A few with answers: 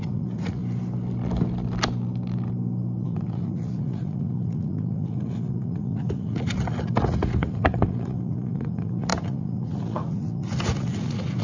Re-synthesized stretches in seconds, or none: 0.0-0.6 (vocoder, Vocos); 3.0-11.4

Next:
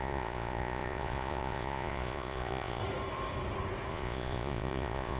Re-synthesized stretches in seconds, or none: 0.0-2.8 (vocoder, Vocos); 3.9-5.2

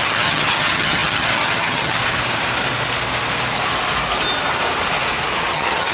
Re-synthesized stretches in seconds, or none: 0.0-2.0 (vocoder, HiFi-GAN); 5.5-5.9

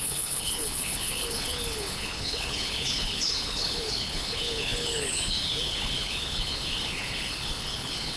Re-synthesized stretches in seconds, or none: 0.0-8.2 (codec, HILCodec)